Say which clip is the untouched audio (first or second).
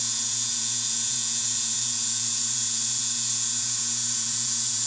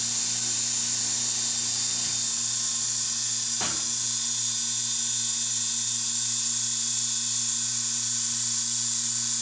second